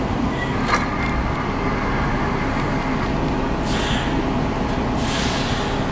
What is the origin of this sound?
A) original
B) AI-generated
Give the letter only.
A